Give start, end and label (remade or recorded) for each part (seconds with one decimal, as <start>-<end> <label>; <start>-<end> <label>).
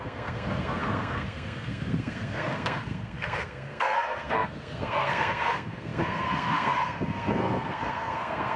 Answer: 0.0-8.6 remade